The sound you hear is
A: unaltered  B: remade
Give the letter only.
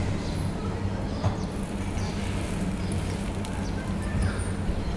A